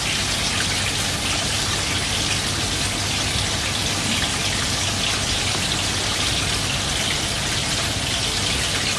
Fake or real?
real